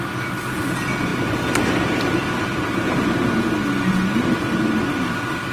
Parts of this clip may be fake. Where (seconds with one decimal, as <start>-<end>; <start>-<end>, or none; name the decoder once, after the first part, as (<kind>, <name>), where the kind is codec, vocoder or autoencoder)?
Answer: none